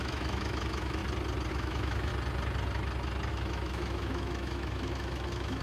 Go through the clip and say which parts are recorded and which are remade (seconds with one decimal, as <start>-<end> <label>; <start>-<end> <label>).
0.0-1.0 remade; 1.0-1.5 recorded; 1.5-2.1 remade; 2.1-3.3 recorded; 3.3-5.6 remade